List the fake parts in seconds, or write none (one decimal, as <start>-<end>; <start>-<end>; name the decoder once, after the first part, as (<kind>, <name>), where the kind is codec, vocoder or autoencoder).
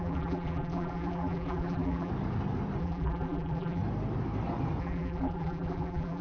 0.0-2.1 (vocoder, BigVGAN v2); 2.8-3.8; 4.8-6.2